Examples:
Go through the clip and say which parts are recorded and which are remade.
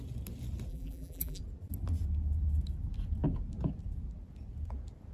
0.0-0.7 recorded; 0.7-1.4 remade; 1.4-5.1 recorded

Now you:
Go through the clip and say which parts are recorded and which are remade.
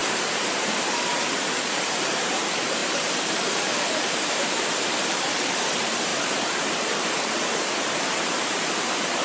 0.0-9.2 remade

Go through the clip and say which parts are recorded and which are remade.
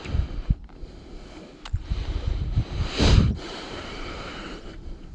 0.0-1.5 recorded; 1.5-4.6 remade; 4.6-5.1 recorded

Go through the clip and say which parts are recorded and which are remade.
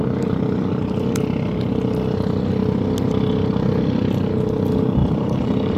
0.0-5.0 recorded; 5.0-5.8 remade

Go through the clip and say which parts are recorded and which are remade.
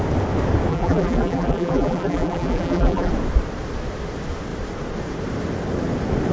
0.0-0.7 recorded; 0.7-3.1 remade; 3.1-6.3 recorded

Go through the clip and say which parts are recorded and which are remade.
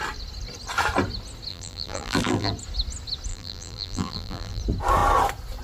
0.0-1.5 recorded; 1.5-2.5 remade; 2.5-3.3 recorded; 3.3-4.6 remade; 4.6-5.6 recorded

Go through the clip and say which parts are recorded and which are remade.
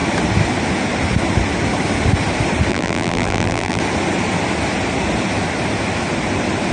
0.0-2.7 recorded; 2.7-3.8 remade; 3.8-6.7 recorded